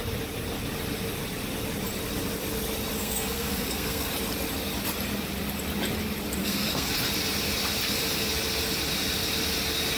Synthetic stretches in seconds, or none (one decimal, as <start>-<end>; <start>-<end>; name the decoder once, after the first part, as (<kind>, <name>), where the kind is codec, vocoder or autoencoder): 3.0-4.1 (codec, SNAC); 6.4-6.9